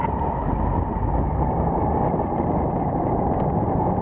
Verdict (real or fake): real